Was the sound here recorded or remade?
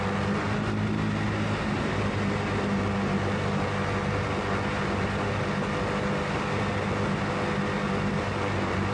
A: recorded